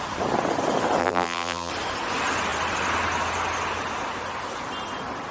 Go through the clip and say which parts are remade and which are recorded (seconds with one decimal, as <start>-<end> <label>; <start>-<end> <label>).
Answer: 0.0-1.0 recorded; 1.0-1.7 remade; 1.7-5.3 recorded